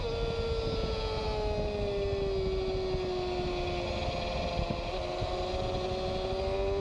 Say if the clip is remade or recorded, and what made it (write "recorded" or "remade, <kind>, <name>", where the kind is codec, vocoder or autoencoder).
recorded